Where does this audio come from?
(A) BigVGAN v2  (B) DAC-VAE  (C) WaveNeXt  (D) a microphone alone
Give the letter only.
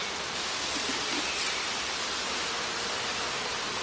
D